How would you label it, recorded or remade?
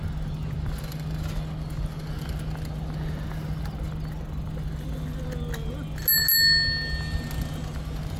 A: recorded